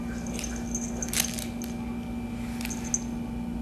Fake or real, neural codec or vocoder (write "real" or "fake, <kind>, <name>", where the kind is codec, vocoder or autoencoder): real